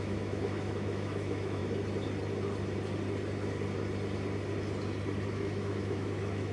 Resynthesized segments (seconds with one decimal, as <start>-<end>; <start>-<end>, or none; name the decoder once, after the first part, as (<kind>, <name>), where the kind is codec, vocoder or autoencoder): 0.0-1.6 (autoencoder, DAC-VAE); 5.3-6.5